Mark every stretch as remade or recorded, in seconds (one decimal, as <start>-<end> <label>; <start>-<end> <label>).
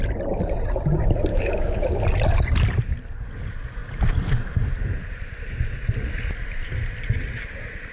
0.0-1.3 recorded; 1.3-1.9 remade; 1.9-7.9 recorded